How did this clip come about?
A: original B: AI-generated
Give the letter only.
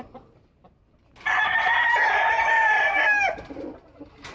A